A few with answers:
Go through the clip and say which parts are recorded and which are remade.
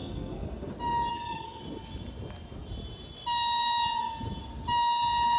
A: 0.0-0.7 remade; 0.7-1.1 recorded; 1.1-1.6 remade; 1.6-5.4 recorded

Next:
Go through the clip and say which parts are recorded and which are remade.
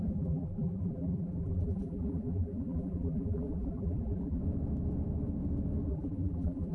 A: 0.0-4.4 remade; 4.4-5.9 recorded; 5.9-6.7 remade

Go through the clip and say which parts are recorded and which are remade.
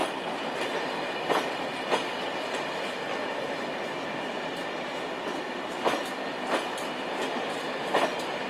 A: 0.0-8.5 recorded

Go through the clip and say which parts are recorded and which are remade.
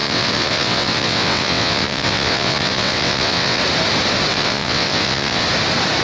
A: 0.0-3.6 remade; 3.6-4.3 recorded; 4.3-5.4 remade; 5.4-6.0 recorded